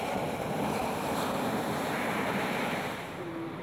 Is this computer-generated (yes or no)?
no